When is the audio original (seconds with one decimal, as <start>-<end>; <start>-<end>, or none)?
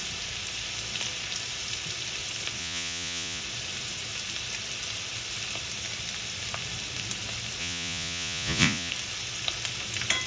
0.0-2.6; 3.4-7.6; 8.9-10.3